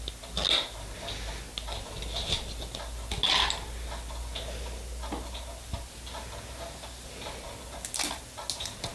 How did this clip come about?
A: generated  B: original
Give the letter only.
B